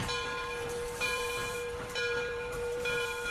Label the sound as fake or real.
fake